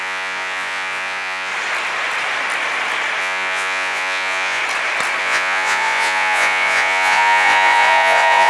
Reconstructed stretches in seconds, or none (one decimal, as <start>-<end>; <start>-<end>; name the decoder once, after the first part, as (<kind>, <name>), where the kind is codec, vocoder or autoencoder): 0.0-1.5 (vocoder, Vocos); 3.2-4.6; 5.2-8.5